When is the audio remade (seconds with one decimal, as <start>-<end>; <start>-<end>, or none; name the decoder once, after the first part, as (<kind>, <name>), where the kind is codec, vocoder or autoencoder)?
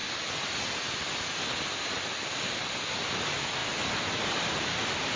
none